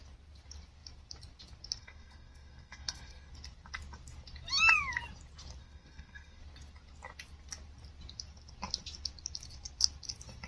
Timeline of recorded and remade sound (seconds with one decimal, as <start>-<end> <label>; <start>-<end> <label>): 0.0-1.8 recorded; 1.8-3.3 remade; 3.3-5.6 recorded; 5.6-6.4 remade; 6.4-10.5 recorded

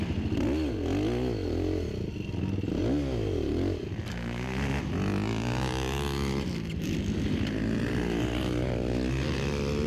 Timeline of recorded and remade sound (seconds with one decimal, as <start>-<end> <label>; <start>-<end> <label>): 0.0-4.1 recorded; 4.1-4.8 remade; 4.8-9.9 recorded

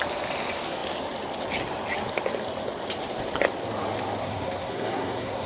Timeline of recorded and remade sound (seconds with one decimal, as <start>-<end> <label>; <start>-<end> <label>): 0.0-4.2 recorded; 4.2-5.5 remade

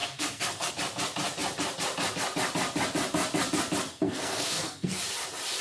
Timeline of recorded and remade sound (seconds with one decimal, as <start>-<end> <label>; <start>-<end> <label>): 0.0-0.7 remade; 0.7-3.9 recorded; 3.9-5.0 remade; 5.0-5.6 recorded

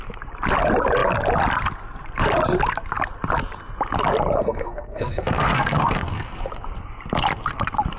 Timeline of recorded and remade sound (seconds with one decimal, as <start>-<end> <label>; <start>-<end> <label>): 0.0-4.4 recorded; 4.4-6.5 remade; 6.5-8.0 recorded

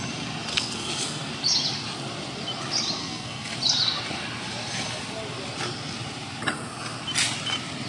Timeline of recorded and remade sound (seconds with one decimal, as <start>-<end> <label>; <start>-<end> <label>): 0.0-0.5 recorded; 0.5-1.3 remade; 1.3-3.0 recorded; 3.0-3.5 remade; 3.5-7.9 recorded